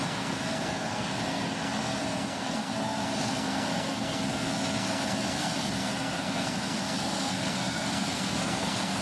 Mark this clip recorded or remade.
remade